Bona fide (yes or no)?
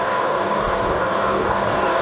no